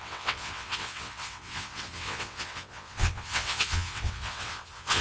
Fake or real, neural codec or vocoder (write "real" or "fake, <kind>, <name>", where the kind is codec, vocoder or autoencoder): fake, vocoder, WaveNeXt